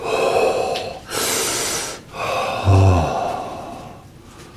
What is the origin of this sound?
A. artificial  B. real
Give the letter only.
B